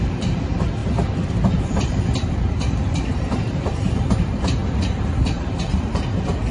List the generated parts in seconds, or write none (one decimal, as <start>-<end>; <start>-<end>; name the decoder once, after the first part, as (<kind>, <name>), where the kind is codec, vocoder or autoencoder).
0.0-0.8 (vocoder, BigVGAN v2); 1.6-6.5